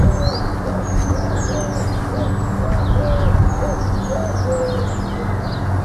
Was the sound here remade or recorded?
recorded